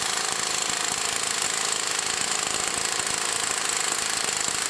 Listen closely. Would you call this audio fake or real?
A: real